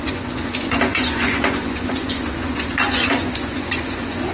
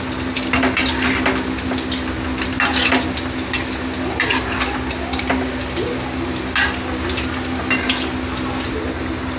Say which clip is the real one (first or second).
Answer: second